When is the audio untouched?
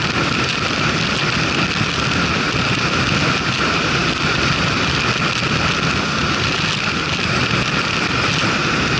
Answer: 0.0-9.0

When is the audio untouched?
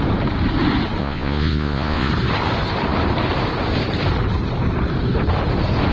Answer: 0.0-1.0; 2.1-5.9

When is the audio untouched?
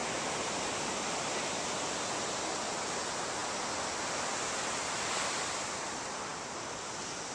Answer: 0.0-7.3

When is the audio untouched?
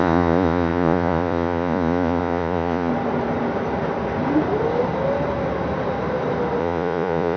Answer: 2.9-6.6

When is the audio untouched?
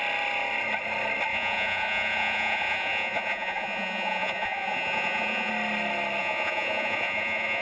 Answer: 0.0-1.3; 5.5-6.2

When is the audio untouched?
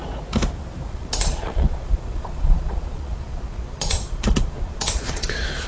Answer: 0.0-0.9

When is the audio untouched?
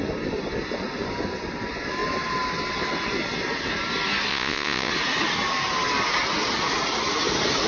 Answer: 0.0-4.3; 4.9-7.7